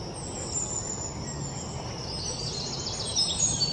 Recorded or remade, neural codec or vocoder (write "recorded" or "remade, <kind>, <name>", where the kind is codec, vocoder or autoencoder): recorded